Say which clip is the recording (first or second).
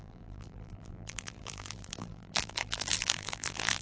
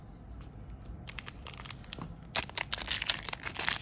second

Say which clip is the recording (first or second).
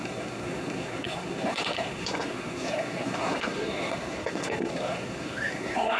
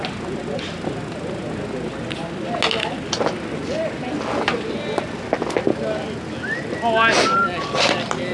second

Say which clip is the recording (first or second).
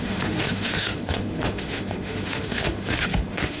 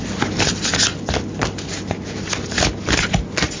second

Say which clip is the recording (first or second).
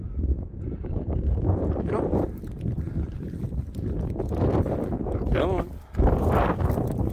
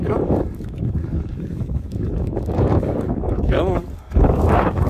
first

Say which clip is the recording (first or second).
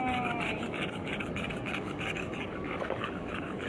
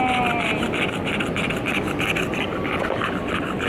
second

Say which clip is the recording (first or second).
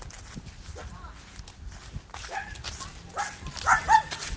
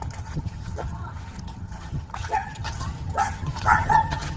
first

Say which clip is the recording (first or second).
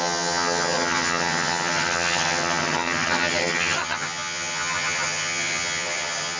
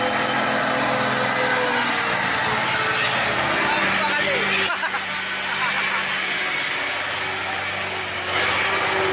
second